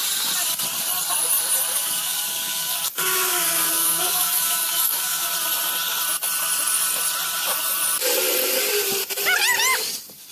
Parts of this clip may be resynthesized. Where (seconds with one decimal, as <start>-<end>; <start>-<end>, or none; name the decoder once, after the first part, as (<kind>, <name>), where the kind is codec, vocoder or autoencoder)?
1.7-5.3 (codec, DAC)